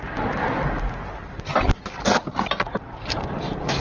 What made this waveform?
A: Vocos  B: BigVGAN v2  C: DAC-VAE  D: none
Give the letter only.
D